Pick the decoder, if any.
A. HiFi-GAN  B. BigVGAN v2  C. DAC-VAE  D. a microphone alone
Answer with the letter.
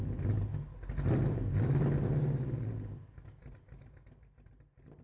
D